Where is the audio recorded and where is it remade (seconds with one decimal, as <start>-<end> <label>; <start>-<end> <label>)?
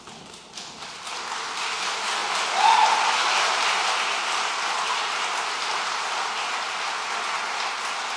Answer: 0.0-8.2 recorded